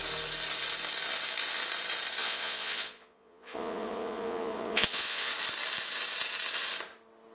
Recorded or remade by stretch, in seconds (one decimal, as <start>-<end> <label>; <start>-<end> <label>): 0.0-2.2 recorded; 2.2-5.3 remade; 5.3-7.3 recorded